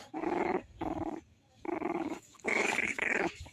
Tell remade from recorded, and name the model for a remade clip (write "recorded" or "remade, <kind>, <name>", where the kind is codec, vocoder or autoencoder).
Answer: remade, codec, DAC